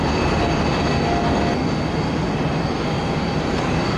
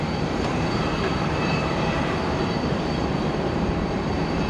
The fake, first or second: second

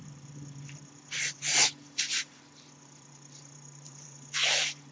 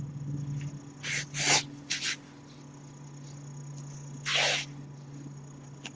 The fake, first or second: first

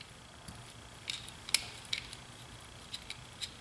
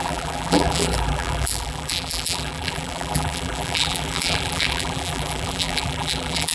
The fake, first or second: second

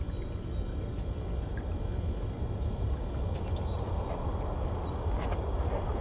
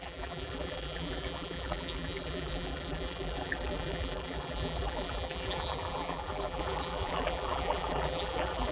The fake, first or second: second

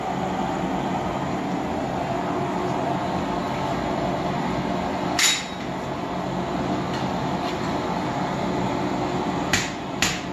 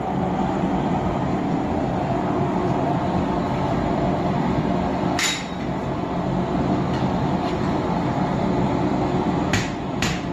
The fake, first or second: second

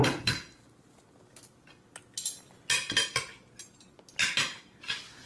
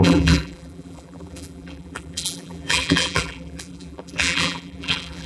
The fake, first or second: second